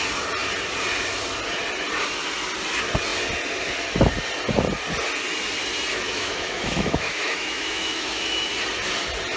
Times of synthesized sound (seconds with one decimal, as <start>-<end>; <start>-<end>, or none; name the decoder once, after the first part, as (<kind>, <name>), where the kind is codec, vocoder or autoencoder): 5.9-8.5 (autoencoder, DAC-VAE)